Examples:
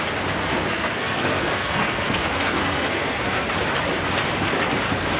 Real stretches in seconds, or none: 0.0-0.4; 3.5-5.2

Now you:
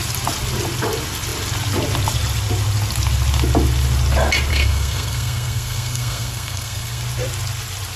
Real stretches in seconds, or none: 0.0-4.5; 7.0-8.0

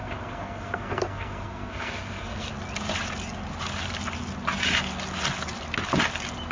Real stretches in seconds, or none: 2.5-6.5

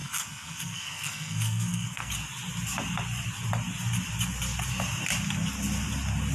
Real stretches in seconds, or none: 2.1-6.3

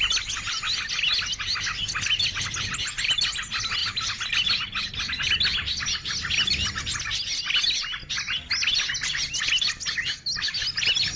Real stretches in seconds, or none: 0.0-11.2

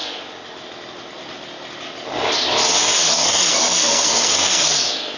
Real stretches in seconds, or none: 0.0-3.1

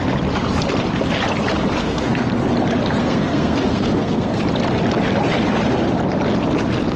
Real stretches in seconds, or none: 0.0-1.8; 2.3-3.0; 4.4-7.0

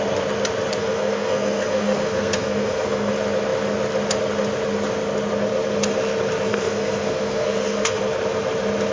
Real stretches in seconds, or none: 0.0-0.8; 3.1-6.5; 8.0-8.9